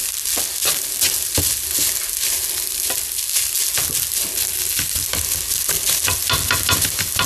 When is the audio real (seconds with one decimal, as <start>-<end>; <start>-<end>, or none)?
0.0-7.3